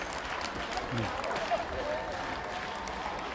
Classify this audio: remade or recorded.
recorded